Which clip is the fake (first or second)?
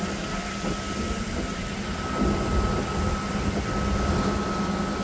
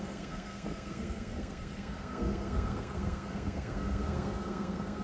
second